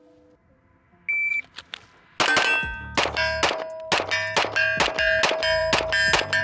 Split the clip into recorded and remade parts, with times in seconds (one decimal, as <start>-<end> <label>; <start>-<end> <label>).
0.0-6.4 recorded